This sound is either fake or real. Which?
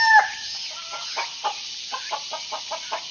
real